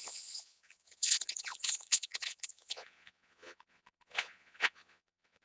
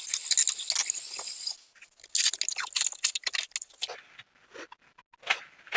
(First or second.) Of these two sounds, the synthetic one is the first